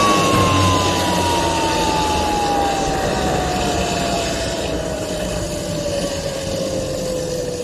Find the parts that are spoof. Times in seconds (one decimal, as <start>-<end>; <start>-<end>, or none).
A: 3.5-6.4